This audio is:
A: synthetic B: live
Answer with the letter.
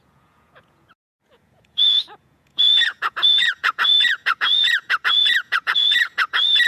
A